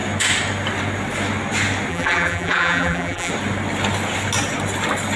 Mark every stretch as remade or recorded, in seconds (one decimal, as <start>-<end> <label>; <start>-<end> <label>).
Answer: 0.0-1.9 recorded; 1.9-3.3 remade; 3.3-5.2 recorded